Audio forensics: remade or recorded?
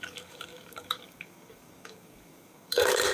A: remade